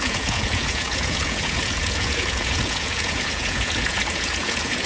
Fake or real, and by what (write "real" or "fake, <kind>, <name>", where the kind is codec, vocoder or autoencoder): fake, vocoder, Vocos